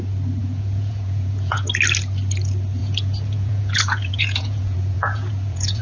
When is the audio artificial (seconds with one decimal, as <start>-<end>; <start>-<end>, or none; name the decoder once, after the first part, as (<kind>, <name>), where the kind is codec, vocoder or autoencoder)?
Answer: 0.4-1.7 (vocoder, Vocos); 2.8-5.8